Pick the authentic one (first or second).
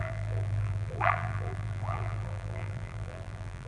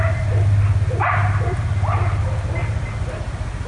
second